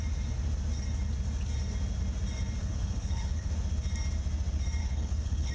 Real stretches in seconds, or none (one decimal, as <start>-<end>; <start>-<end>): 0.0-2.6; 3.5-4.8